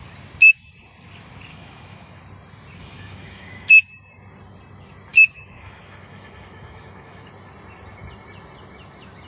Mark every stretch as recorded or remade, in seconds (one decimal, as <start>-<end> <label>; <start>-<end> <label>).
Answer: 0.0-1.5 recorded; 1.5-2.2 remade; 2.2-2.8 recorded; 2.8-3.7 remade; 3.7-5.1 recorded; 5.1-7.3 remade; 7.3-9.3 recorded